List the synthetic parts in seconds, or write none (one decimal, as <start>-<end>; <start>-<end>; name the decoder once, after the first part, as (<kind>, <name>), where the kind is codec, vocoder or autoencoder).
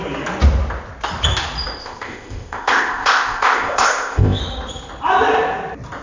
1.8-4.4 (codec, ZipCodec)